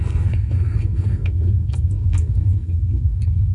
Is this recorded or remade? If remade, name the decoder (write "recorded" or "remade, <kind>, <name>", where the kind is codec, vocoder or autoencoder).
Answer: remade, codec, SNAC